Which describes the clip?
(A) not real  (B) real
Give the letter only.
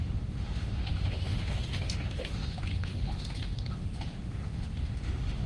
A